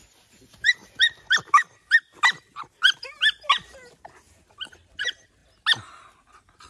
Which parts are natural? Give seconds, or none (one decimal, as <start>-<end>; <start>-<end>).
0.0-6.7

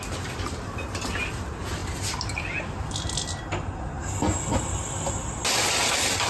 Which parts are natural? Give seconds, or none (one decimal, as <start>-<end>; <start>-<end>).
0.0-6.3